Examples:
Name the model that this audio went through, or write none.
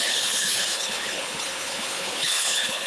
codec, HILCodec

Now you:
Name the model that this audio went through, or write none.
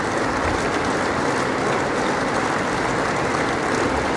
none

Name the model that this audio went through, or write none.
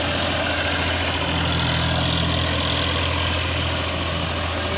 none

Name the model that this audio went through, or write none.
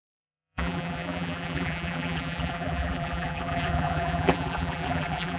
vocoder, BigVGAN v2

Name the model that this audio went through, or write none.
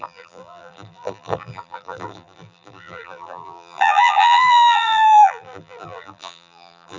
vocoder, BigVGAN v2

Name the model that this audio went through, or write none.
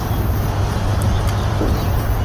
vocoder, BigVGAN v2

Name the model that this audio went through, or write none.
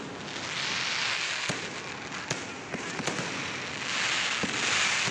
none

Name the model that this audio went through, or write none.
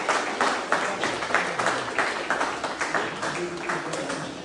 none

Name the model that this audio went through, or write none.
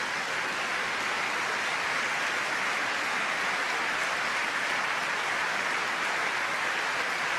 none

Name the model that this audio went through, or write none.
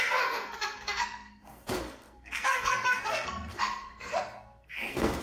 codec, SNAC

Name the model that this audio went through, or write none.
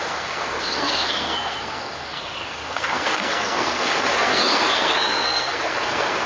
codec, SNAC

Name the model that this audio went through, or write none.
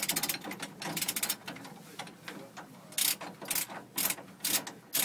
none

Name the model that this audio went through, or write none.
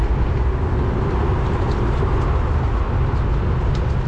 none